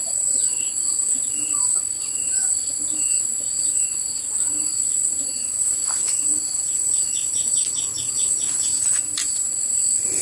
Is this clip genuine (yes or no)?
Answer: yes